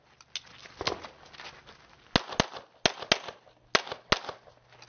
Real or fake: real